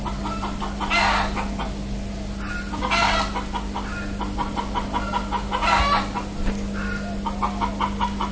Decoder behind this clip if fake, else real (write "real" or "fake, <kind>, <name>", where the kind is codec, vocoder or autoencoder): real